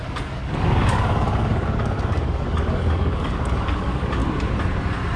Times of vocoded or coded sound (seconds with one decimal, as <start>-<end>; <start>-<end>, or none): 0.0-4.2